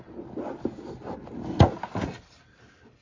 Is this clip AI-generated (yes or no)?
no